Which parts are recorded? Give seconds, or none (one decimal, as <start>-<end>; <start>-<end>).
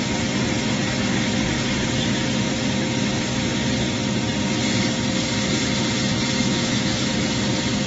0.0-6.4; 7.1-7.9